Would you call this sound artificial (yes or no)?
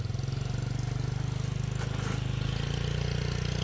no